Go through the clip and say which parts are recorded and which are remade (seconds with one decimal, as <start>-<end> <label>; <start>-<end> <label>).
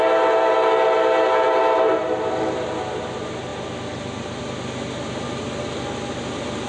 0.0-6.7 recorded